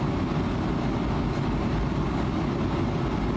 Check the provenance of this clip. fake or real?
real